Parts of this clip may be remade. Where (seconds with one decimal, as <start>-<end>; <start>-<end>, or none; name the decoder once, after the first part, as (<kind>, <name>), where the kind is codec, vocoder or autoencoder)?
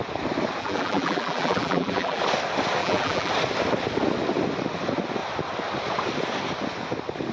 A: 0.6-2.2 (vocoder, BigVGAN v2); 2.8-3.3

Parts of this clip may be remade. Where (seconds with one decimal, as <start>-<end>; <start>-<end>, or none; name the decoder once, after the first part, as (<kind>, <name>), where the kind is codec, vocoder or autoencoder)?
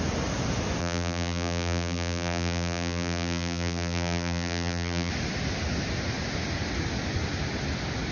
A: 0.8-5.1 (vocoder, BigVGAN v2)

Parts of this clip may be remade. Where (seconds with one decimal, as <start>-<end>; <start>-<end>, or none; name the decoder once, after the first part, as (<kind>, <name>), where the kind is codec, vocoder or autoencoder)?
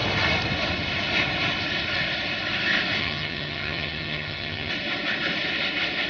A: 3.0-4.7 (vocoder, HiFi-GAN)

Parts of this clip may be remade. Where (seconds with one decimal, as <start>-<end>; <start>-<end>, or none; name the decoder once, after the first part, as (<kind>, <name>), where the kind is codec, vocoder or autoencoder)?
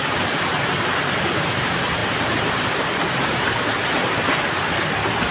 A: 0.0-5.3 (vocoder, BigVGAN v2)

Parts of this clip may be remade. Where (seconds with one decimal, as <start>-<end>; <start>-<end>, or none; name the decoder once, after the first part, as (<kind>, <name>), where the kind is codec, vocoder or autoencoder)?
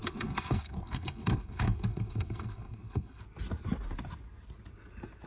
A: 0.0-3.2 (codec, SNAC)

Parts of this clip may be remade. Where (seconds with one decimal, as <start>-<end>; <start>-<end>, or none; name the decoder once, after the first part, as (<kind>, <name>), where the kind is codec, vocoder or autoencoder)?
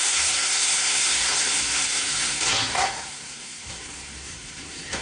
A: 0.0-5.0 (codec, SNAC)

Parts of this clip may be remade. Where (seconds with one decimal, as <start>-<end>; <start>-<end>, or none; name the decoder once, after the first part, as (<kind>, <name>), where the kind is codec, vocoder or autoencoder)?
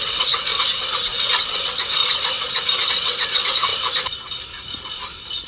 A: 0.0-0.5 (vocoder, WaveNeXt); 1.2-2.0; 2.9-3.7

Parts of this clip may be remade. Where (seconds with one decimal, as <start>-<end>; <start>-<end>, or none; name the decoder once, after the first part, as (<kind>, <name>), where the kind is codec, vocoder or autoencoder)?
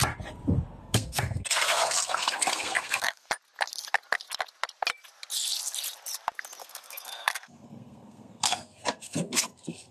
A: 0.8-3.3 (codec, SNAC); 6.6-9.9